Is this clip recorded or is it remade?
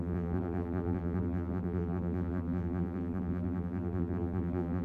remade